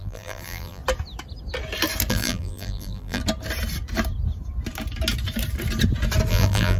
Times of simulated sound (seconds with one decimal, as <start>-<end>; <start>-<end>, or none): 0.0-0.8; 2.1-3.2; 6.3-6.8